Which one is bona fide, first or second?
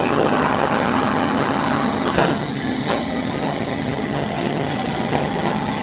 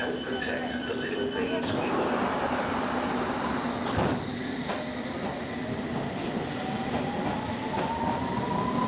second